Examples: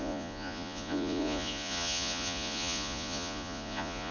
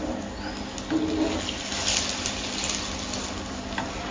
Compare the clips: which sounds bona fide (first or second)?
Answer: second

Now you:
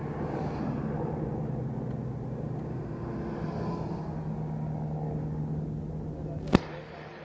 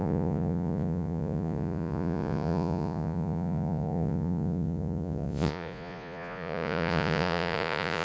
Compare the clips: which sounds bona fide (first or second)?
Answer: first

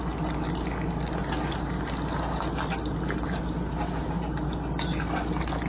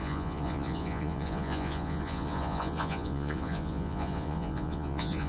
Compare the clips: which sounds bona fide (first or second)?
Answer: first